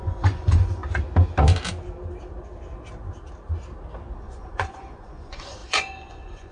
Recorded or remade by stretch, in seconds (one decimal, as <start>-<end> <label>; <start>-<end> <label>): 0.0-0.8 remade; 0.8-4.2 recorded; 4.2-6.5 remade